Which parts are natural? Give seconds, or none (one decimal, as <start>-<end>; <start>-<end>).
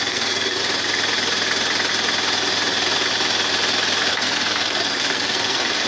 0.6-4.1